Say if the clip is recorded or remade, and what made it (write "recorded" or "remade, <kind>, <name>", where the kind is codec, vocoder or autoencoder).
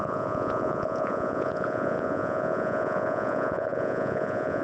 remade, vocoder, Vocos